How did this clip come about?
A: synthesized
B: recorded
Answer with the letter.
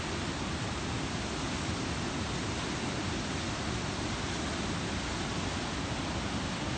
B